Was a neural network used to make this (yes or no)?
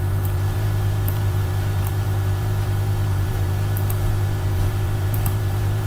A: yes